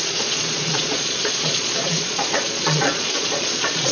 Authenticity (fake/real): fake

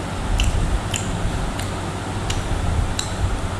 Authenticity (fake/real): real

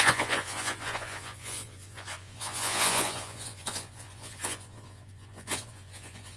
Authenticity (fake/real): fake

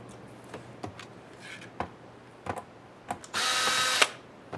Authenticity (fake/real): real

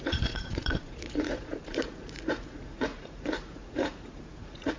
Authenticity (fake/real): fake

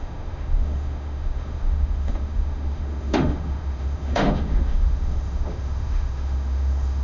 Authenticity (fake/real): fake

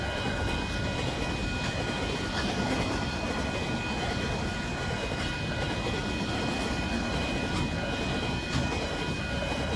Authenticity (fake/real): real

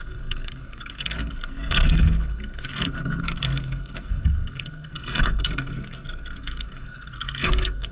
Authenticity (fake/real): fake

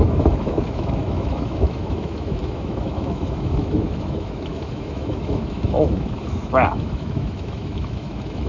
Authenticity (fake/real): fake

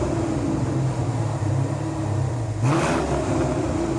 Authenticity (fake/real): real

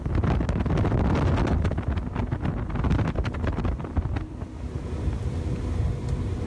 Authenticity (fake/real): real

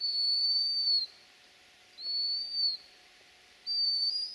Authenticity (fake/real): real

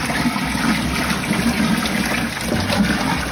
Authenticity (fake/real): real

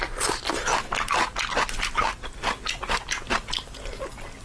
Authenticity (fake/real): real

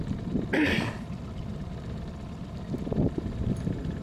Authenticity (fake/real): fake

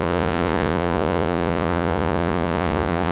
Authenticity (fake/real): fake